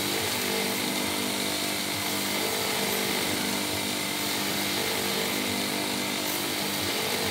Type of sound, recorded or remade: recorded